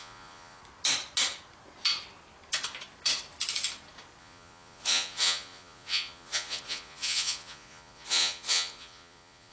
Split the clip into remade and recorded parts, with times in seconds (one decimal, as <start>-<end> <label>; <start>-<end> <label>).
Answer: 0.0-0.6 remade; 0.6-4.2 recorded; 4.2-9.5 remade